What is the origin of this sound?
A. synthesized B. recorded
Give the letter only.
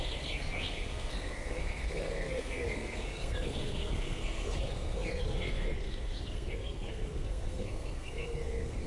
A